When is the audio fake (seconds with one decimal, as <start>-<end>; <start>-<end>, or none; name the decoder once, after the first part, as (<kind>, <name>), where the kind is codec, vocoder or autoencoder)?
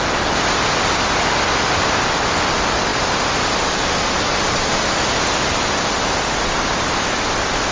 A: none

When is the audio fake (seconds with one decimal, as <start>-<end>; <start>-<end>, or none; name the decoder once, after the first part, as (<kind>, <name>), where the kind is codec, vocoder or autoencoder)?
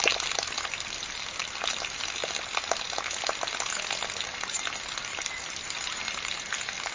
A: none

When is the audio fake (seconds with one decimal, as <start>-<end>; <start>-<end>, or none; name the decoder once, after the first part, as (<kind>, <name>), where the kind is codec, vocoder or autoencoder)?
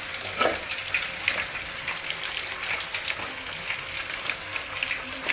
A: 0.5-2.7 (vocoder, BigVGAN v2)